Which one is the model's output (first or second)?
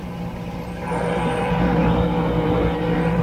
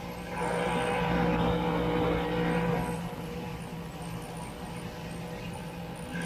first